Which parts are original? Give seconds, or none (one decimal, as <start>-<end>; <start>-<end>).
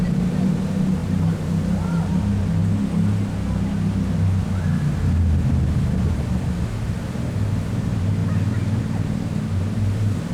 2.6-7.3; 8.2-8.8